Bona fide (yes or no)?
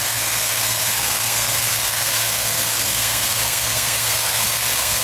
no